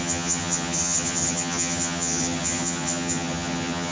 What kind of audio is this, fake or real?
fake